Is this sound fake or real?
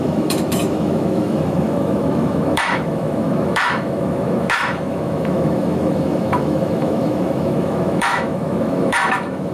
fake